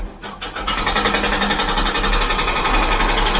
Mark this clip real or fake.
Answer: real